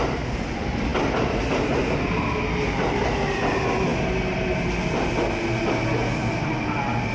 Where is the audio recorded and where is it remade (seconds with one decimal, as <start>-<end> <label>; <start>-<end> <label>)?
0.0-7.1 recorded